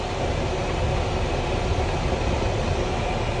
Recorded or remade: recorded